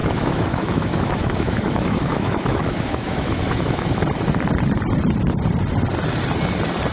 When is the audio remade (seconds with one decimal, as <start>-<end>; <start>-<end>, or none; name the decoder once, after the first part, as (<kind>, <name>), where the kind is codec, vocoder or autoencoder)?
0.0-4.0 (autoencoder, DAC-VAE)